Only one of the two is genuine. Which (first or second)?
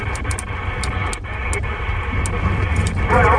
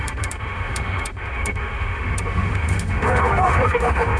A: first